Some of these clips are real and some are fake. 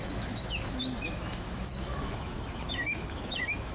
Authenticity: fake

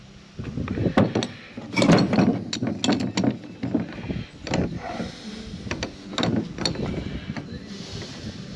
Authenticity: real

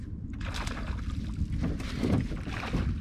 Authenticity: real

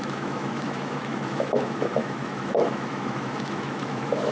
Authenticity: fake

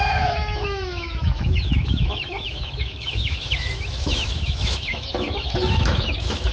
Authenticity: fake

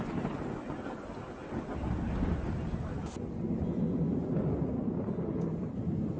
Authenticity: real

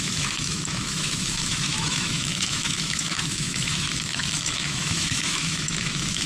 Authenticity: fake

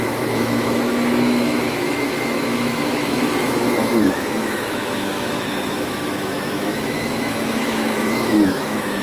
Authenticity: fake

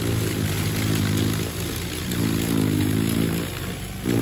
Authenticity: real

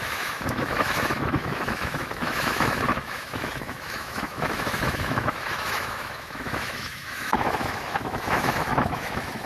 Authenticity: fake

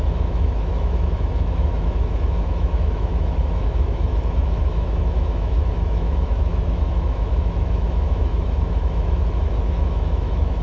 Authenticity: fake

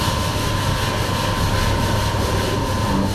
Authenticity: real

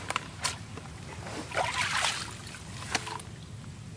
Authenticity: real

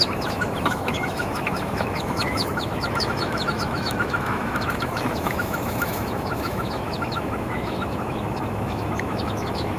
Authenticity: fake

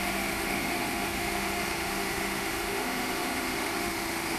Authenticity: fake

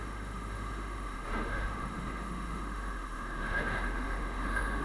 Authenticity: fake